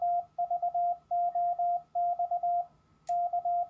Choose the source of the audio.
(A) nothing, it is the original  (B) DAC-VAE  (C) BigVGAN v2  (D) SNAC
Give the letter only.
A